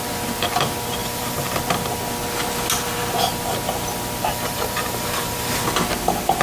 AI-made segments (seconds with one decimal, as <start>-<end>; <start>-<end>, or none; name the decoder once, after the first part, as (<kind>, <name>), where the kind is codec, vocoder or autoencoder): 1.0-1.6 (vocoder, BigVGAN v2); 4.3-5.6